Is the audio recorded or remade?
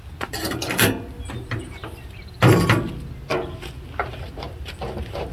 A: recorded